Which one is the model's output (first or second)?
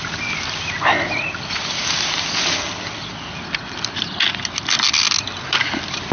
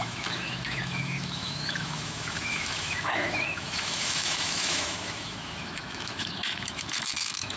second